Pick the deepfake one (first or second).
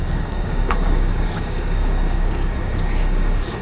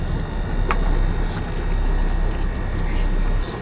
first